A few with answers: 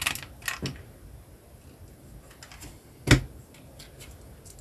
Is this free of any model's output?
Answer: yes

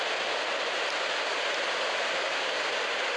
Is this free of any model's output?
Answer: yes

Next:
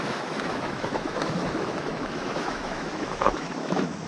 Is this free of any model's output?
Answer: no